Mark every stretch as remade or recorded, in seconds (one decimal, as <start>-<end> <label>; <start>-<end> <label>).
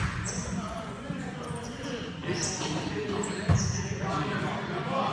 0.0-2.2 remade; 2.2-2.9 recorded; 2.9-5.1 remade